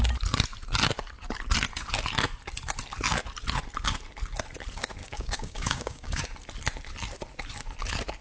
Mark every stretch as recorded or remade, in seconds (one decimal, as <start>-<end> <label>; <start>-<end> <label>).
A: 0.0-5.0 recorded; 5.0-6.2 remade; 6.2-8.2 recorded